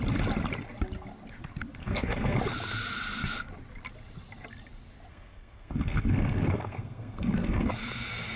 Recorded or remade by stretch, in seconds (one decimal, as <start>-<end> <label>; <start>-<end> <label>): 0.0-1.8 recorded; 1.8-2.4 remade; 2.4-5.1 recorded; 5.1-7.7 remade; 7.7-8.4 recorded